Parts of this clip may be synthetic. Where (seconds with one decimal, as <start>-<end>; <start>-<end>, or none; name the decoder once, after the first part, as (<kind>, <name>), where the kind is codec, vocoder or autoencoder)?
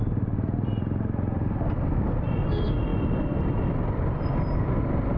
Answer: none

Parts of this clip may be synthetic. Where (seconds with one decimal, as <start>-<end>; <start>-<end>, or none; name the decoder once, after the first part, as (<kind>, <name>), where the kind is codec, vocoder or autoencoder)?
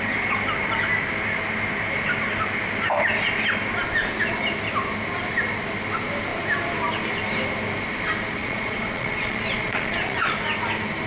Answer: 8.4-10.3 (vocoder, Vocos)